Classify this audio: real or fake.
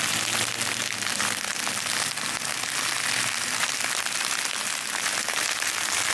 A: real